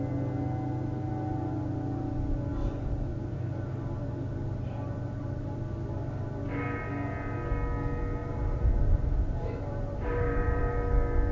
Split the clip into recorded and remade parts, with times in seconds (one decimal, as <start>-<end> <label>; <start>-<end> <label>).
0.0-2.5 recorded; 2.5-5.4 remade; 5.4-8.2 recorded; 8.2-10.6 remade; 10.6-11.3 recorded